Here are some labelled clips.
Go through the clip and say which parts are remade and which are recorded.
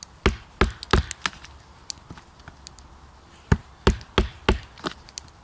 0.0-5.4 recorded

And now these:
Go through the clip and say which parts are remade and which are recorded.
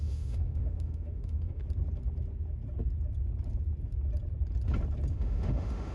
0.0-1.6 remade; 1.6-5.1 recorded; 5.1-5.9 remade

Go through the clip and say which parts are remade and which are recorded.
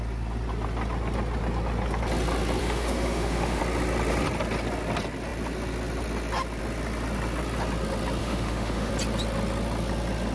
0.0-2.6 recorded; 2.6-3.6 remade; 3.6-8.2 recorded; 8.2-8.9 remade; 8.9-10.3 recorded